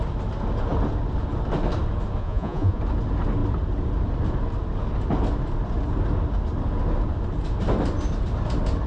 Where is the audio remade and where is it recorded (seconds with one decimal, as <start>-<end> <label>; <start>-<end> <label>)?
0.0-2.2 recorded; 2.2-2.8 remade; 2.8-8.9 recorded